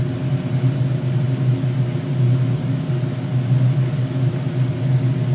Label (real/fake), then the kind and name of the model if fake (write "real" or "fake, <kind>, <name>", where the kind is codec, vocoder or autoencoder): real